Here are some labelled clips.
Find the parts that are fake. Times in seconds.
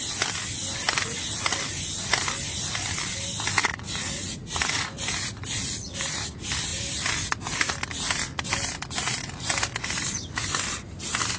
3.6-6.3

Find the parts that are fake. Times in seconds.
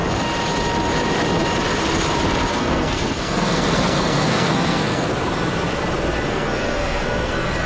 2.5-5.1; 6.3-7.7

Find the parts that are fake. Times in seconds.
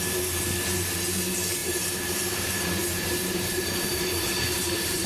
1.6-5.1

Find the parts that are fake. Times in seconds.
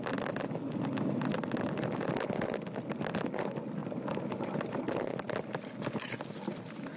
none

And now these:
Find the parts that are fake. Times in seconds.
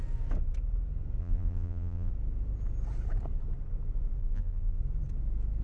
1.2-2.1; 4.2-4.8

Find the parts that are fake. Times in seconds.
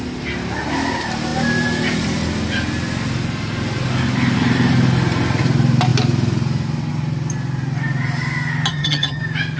8.7-9.2